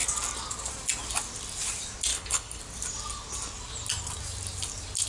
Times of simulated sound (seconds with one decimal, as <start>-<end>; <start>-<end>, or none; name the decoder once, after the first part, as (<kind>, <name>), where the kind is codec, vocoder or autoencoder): 2.1-2.6 (codec, HILCodec)